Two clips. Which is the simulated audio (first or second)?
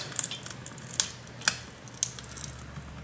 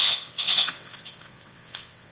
second